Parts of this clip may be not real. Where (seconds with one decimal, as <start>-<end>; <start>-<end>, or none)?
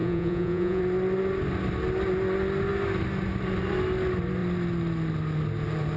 0.0-0.8